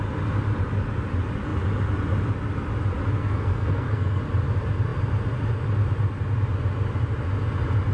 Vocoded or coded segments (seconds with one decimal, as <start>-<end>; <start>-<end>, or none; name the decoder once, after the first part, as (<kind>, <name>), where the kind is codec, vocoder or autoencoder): 3.2-4.2 (codec, SNAC)